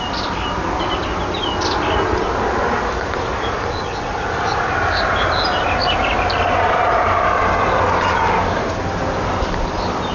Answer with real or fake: real